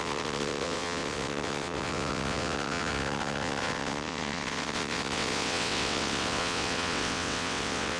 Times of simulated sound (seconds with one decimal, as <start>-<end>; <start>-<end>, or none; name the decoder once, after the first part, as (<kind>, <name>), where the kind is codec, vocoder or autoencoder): 0.0-8.0 (vocoder, WaveNeXt)